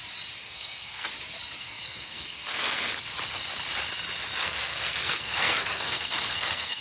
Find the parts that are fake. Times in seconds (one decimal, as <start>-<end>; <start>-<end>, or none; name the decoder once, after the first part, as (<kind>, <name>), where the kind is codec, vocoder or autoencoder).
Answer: 0.4-1.1 (codec, SNAC); 1.6-2.9; 4.4-6.8